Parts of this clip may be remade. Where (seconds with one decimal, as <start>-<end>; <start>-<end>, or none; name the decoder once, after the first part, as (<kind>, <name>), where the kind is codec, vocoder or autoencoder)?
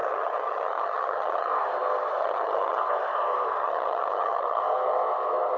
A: 0.0-1.5 (vocoder, HiFi-GAN); 2.2-2.8; 3.6-4.6